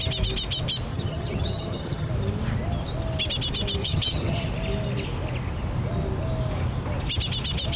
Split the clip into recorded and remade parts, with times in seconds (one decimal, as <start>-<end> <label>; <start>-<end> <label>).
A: 0.0-0.9 recorded; 0.9-2.1 remade; 2.1-3.8 recorded; 3.8-4.5 remade; 4.5-7.8 recorded